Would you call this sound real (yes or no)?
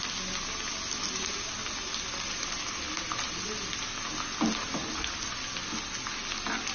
yes